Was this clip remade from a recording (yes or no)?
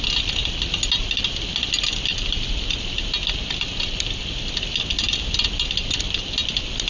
no